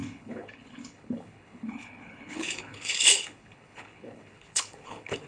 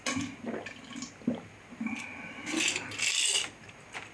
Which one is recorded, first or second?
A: second